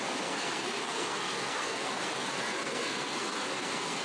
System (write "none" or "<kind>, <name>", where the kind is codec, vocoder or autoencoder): codec, SNAC